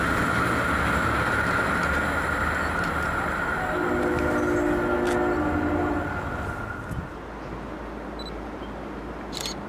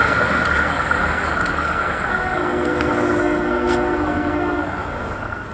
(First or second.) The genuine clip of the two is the first